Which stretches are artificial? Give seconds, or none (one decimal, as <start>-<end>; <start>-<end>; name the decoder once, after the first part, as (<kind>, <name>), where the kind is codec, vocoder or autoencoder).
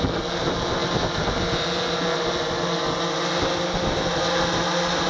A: none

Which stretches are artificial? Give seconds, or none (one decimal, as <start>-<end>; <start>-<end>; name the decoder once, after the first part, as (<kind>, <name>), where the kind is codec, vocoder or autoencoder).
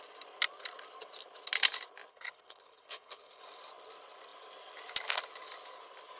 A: 2.1-3.4 (codec, HILCodec)